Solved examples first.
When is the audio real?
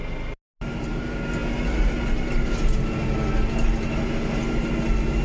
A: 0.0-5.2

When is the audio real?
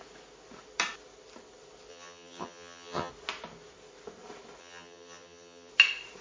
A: 0.0-1.9; 3.1-4.6; 5.7-6.2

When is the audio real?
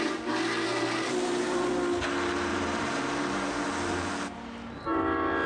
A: 0.0-0.7; 1.7-2.5; 4.1-5.5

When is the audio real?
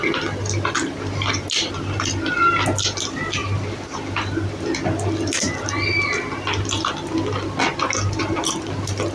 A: 0.0-9.1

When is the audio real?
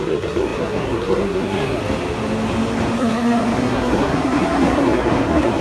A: 1.8-3.0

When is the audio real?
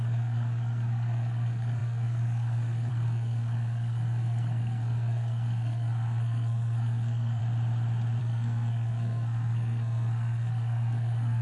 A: 7.4-8.2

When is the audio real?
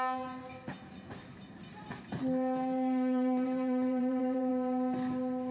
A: 0.0-1.2; 4.5-5.5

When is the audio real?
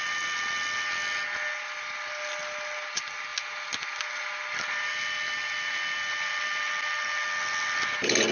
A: 0.0-8.3